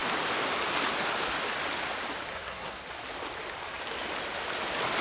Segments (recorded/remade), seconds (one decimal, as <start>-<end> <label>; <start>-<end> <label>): 0.0-2.3 recorded; 2.3-2.8 remade; 2.8-5.0 recorded